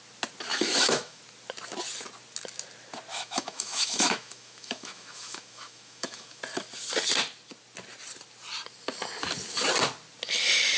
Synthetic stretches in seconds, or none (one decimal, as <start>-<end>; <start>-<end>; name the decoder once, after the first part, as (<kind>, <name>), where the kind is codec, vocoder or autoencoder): 0.5-1.2 (autoencoder, DAC-VAE); 3.1-6.4